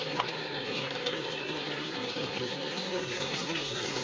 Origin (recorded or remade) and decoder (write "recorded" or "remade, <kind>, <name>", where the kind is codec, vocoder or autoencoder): remade, codec, SNAC